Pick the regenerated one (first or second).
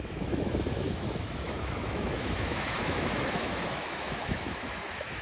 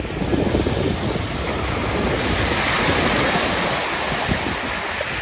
first